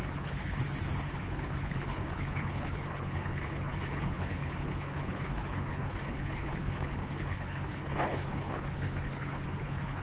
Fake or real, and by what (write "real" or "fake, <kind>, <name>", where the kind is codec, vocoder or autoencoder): fake, codec, HILCodec